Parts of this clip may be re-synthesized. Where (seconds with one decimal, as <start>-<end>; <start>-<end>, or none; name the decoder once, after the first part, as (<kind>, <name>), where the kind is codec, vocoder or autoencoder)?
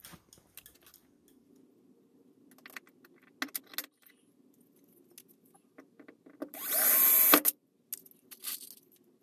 none